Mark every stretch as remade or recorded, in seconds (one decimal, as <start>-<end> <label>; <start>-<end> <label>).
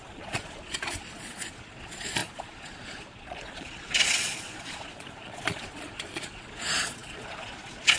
0.0-8.0 remade